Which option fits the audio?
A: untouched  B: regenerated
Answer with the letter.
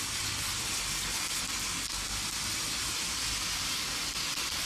A